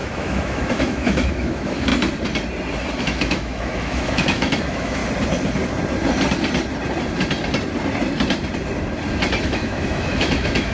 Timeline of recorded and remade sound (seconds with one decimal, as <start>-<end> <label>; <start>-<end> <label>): 0.0-1.9 remade; 1.9-3.0 recorded; 3.0-5.0 remade; 5.0-9.4 recorded; 9.4-10.7 remade

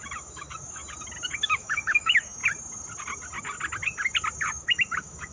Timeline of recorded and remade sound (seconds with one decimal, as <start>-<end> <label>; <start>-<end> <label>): 0.0-0.8 remade; 0.8-1.3 recorded; 1.3-2.4 remade; 2.4-4.5 recorded; 4.5-5.3 remade

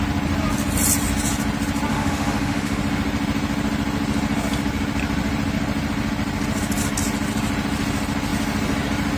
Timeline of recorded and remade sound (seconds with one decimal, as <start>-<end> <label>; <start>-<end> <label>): 0.0-1.9 recorded; 1.9-2.8 remade; 2.8-9.2 recorded

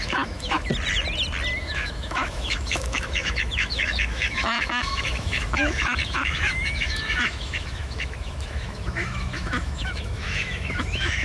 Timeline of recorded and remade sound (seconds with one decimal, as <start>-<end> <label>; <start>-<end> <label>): 0.0-0.7 remade; 0.7-1.6 recorded; 1.6-11.2 remade